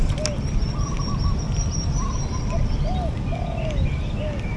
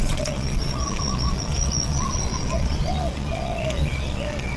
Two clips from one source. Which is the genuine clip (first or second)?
first